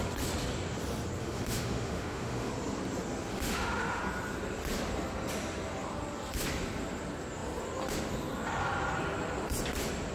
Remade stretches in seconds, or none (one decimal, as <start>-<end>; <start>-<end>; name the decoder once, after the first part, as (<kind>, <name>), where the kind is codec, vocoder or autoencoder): 1.2-2.5 (autoencoder, DAC-VAE); 3.3-4.0